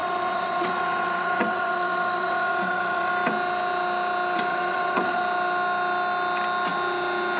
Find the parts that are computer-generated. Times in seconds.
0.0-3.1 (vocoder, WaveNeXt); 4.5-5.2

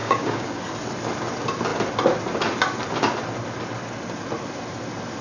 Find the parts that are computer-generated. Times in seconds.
0.0-0.6 (codec, DAC)

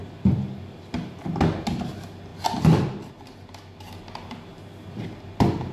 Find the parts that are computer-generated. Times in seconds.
none

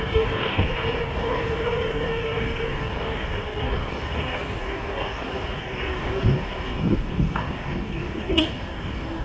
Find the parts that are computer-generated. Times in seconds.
0.0-9.2 (codec, DAC)

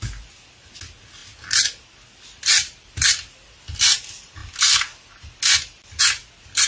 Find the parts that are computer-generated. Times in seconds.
none

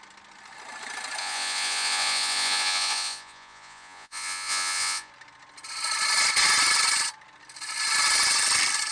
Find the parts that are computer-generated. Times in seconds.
1.2-5.1 (vocoder, Vocos)

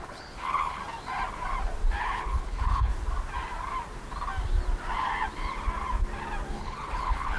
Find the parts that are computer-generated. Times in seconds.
0.0-0.8 (codec, HILCodec); 2.0-2.9; 6.5-7.4